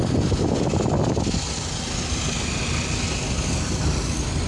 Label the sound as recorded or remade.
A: recorded